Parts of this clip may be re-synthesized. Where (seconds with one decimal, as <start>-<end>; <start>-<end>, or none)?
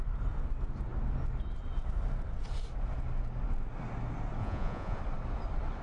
4.4-5.0